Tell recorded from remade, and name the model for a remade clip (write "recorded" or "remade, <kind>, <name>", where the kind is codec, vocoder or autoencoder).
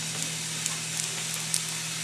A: recorded